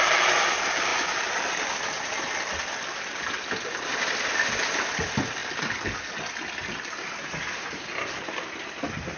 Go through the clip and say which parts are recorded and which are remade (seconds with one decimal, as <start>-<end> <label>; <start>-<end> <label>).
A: 0.0-9.2 recorded